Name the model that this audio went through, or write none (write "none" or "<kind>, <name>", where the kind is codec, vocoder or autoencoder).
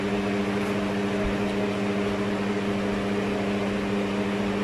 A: none